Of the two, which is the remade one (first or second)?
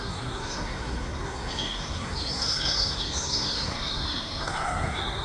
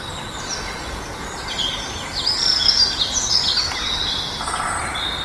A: first